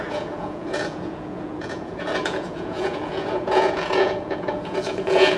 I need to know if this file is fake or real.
fake